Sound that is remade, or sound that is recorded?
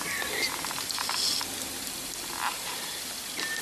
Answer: recorded